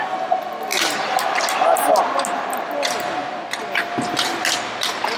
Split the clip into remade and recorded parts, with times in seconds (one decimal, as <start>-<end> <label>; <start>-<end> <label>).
0.0-5.2 recorded